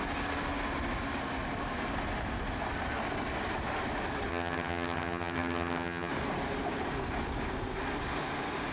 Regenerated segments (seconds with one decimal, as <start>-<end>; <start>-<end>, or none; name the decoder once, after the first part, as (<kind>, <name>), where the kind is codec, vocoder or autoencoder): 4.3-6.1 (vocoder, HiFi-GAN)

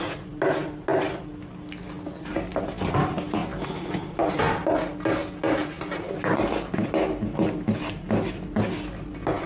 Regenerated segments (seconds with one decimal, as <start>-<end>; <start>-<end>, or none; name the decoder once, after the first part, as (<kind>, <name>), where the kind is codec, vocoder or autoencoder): none

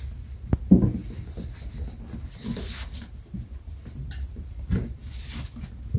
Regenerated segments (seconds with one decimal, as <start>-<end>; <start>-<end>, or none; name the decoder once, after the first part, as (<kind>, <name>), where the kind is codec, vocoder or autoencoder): none

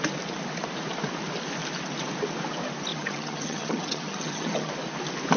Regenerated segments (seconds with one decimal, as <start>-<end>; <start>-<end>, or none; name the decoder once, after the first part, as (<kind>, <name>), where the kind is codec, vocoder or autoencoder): 2.9-4.7 (vocoder, HiFi-GAN)

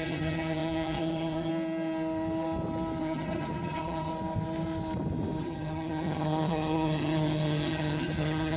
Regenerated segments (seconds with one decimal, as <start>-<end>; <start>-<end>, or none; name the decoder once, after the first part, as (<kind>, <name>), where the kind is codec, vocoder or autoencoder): 0.0-1.5 (vocoder, HiFi-GAN); 3.0-4.1; 5.4-8.6

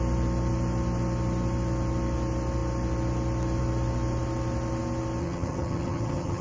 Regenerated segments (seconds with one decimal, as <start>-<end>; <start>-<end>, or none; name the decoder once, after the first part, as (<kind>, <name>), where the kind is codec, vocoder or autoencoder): 5.2-6.4 (vocoder, HiFi-GAN)

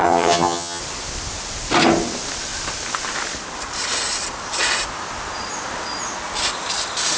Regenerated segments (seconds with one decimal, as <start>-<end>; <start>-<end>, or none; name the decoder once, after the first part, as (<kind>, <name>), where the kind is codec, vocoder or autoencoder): 0.0-0.8 (vocoder, HiFi-GAN)